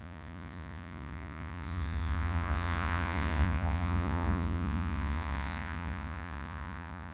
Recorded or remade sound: remade